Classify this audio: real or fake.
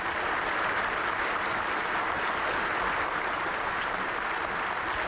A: fake